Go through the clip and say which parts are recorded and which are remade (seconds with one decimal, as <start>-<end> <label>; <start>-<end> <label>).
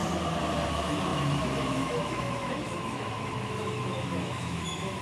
0.0-0.7 recorded; 0.7-5.0 remade